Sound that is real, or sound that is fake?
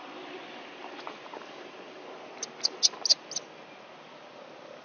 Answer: real